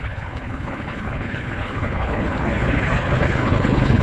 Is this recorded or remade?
remade